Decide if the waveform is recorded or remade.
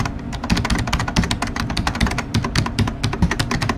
recorded